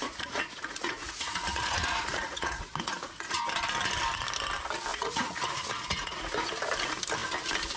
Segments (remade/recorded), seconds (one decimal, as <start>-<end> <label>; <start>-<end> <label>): 0.0-3.4 remade; 3.4-4.9 recorded; 4.9-6.5 remade; 6.5-7.8 recorded